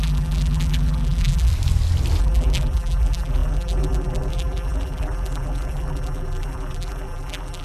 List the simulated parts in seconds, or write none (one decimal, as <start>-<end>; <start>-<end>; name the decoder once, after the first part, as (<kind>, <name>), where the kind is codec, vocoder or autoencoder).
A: 0.0-1.5 (vocoder, BigVGAN v2); 2.2-7.6

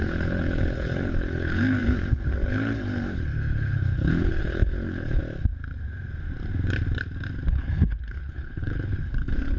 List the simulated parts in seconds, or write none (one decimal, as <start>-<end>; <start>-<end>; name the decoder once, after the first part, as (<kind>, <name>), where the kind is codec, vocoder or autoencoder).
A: 0.0-5.2 (codec, HILCodec); 7.5-9.6

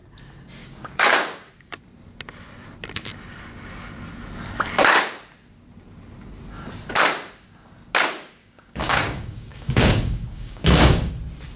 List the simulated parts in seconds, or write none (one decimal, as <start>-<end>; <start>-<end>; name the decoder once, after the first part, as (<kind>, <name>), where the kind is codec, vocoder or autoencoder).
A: 0.6-1.5 (codec, DAC); 8.4-11.1

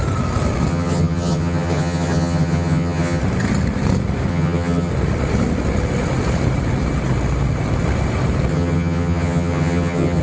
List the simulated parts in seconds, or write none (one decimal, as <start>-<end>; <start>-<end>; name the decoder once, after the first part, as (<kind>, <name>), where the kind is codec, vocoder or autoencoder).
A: 0.7-3.2 (vocoder, HiFi-GAN); 4.3-4.9; 8.5-10.2

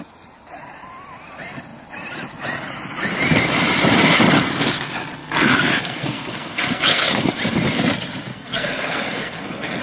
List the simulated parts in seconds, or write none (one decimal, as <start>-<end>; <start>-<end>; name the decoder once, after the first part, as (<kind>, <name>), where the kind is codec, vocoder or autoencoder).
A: 5.2-7.3 (codec, SNAC); 8.3-9.8

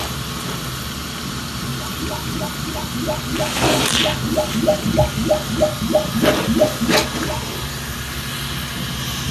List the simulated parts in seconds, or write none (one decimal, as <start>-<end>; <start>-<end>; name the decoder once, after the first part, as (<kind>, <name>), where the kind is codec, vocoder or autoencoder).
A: 1.7-2.4 (vocoder, BigVGAN v2)

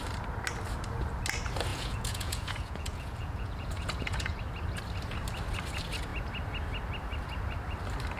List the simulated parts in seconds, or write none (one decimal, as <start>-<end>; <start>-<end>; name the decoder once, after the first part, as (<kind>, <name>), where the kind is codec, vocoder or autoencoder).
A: 1.7-4.4 (vocoder, Vocos)